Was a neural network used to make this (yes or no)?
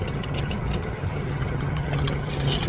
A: yes